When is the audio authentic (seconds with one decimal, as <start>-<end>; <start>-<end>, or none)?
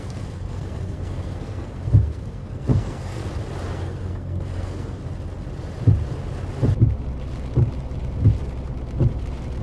3.2-3.7; 5.0-9.6